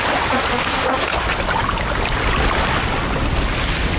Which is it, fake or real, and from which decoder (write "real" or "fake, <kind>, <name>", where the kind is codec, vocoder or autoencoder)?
real